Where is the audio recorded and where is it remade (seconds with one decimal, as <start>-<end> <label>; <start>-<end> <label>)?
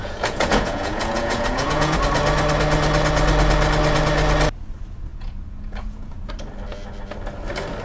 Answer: 0.0-2.0 remade; 2.0-5.1 recorded; 5.1-6.3 remade; 6.3-7.8 recorded